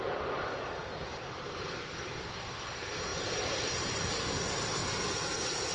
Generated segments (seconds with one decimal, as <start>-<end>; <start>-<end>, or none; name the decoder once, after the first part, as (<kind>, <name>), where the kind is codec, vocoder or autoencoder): 1.1-1.9 (vocoder, BigVGAN v2); 3.1-4.1; 4.8-5.7